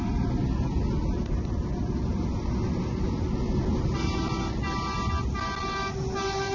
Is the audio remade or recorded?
recorded